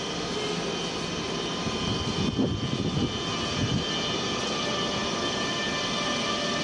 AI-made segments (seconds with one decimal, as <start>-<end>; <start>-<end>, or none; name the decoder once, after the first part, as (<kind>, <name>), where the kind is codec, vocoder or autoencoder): none